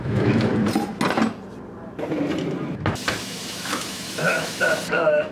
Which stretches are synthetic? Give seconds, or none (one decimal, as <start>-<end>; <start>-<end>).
0.0-0.5; 3.2-5.3